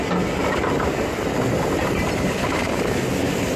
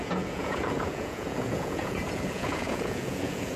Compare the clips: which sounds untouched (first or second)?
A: first